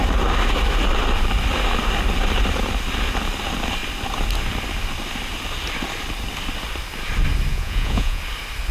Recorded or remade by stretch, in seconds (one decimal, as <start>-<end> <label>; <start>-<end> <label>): 0.0-7.5 recorded; 7.5-8.2 remade; 8.2-8.7 recorded

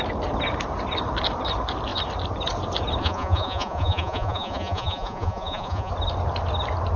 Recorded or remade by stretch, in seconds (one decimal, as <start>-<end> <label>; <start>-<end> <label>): 0.0-3.0 recorded; 3.0-5.9 remade; 5.9-7.0 recorded